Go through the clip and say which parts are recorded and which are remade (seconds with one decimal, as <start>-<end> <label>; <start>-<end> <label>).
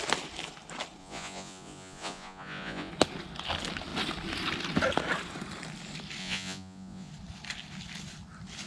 0.0-1.0 recorded; 1.0-2.9 remade; 2.9-6.2 recorded; 6.2-7.1 remade; 7.1-8.7 recorded